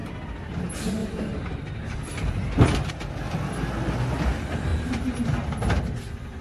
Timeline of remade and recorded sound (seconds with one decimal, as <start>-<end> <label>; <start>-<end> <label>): 0.0-1.0 recorded; 1.0-2.9 remade; 2.9-4.7 recorded; 4.7-5.8 remade; 5.8-6.4 recorded